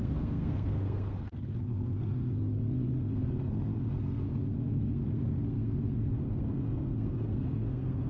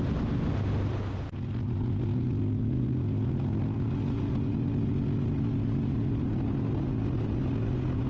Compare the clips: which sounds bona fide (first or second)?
second